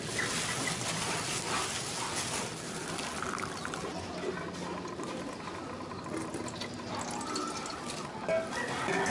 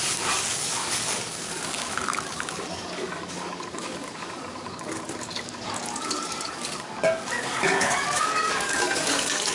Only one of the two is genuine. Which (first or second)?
first